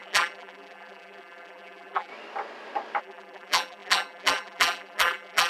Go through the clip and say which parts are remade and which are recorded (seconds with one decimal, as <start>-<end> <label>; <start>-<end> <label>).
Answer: 0.0-2.1 remade; 2.1-3.0 recorded; 3.0-5.5 remade